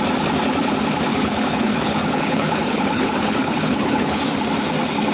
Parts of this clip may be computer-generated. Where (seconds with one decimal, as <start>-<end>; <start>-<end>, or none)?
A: 1.1-4.2